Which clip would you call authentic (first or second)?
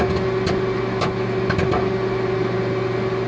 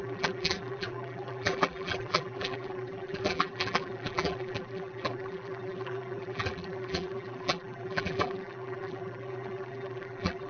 first